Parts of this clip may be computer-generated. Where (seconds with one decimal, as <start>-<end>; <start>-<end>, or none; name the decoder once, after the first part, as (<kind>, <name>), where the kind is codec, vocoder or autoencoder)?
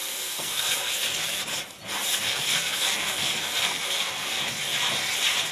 0.0-1.4 (codec, SNAC); 2.1-4.4